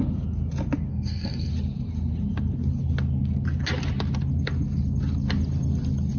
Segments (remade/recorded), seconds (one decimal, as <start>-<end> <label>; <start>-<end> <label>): 0.0-0.9 recorded; 0.9-1.5 remade; 1.5-6.2 recorded